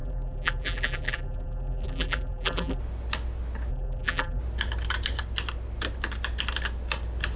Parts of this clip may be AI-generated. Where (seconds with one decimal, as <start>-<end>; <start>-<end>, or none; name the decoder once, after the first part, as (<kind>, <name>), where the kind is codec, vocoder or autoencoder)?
0.0-2.8 (vocoder, BigVGAN v2); 3.7-4.4